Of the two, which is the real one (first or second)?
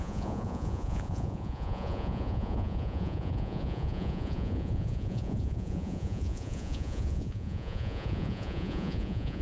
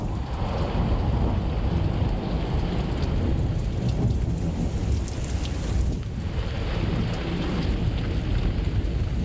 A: second